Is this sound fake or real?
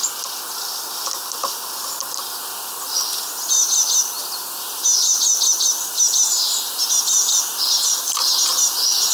real